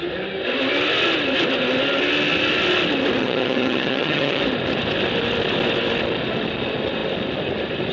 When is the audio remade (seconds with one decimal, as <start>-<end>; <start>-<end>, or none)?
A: 3.2-4.4